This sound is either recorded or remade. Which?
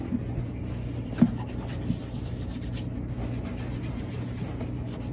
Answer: recorded